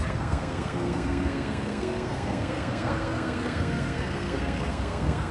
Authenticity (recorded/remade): remade